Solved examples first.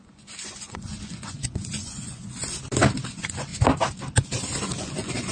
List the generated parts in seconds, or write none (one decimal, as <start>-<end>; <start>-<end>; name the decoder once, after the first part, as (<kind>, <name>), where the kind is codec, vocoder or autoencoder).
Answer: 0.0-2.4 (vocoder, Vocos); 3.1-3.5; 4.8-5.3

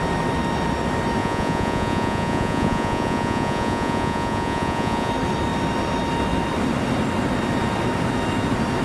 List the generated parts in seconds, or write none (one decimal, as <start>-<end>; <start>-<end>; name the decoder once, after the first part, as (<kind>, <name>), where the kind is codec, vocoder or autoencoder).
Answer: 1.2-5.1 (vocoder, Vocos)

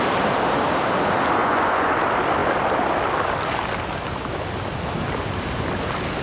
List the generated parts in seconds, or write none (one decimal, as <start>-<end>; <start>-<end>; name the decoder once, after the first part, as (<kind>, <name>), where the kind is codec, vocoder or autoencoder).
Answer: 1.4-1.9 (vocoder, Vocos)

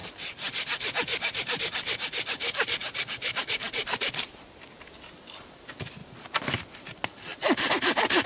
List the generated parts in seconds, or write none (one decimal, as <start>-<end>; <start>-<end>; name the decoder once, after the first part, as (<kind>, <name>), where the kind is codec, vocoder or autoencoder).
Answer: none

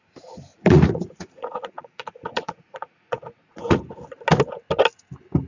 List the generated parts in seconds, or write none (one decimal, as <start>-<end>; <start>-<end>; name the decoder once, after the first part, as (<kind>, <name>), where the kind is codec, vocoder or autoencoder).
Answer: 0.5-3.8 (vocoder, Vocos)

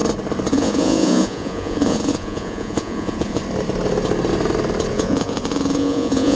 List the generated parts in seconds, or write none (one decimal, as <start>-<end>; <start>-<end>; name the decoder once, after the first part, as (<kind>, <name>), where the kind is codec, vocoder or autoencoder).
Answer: 0.5-3.4 (vocoder, Vocos); 4.9-6.3

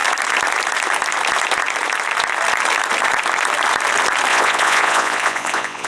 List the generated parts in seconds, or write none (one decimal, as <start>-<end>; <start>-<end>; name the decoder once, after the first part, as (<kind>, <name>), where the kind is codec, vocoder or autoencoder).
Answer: 4.3-5.9 (vocoder, Vocos)